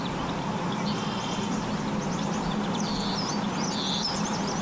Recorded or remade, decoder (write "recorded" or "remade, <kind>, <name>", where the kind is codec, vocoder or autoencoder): recorded